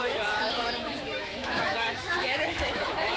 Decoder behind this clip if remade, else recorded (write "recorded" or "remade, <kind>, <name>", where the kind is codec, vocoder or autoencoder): remade, autoencoder, DAC-VAE